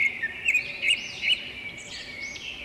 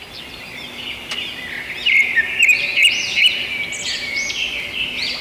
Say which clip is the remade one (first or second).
first